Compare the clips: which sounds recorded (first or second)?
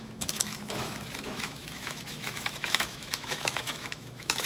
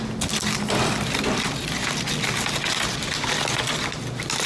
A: second